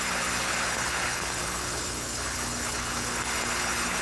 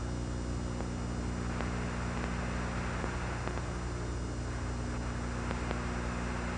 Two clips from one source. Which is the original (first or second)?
second